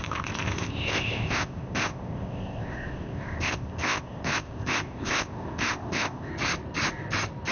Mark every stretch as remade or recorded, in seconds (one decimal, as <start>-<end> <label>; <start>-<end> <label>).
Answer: 0.0-6.3 remade; 6.3-7.5 recorded